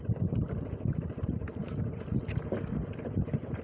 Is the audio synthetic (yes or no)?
no